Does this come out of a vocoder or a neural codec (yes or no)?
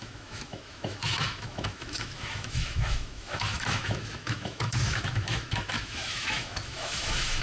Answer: yes